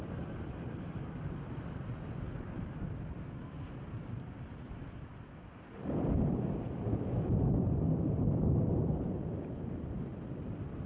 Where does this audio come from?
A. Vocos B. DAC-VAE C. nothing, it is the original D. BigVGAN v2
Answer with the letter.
D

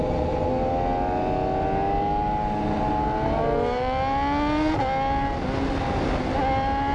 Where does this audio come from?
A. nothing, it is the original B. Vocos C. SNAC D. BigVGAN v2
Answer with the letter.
A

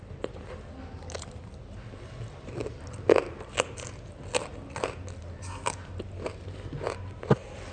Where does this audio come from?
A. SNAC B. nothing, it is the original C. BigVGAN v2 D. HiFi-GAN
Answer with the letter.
B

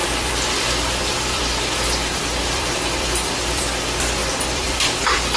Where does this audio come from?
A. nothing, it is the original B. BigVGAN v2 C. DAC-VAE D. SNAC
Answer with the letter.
B